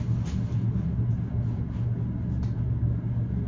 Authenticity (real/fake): real